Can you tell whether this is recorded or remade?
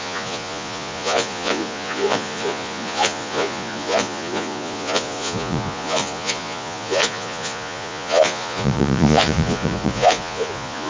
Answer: remade